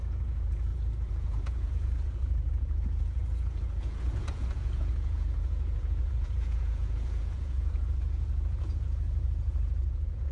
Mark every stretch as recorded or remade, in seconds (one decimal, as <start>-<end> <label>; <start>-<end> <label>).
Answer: 0.0-10.3 remade